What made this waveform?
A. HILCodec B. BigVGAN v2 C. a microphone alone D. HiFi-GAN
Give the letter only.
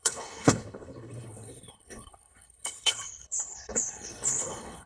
A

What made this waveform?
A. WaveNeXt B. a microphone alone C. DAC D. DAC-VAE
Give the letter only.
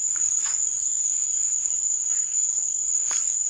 C